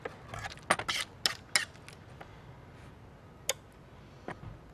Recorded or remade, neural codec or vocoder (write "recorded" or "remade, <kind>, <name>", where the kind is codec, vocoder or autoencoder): recorded